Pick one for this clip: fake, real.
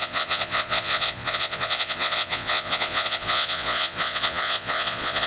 fake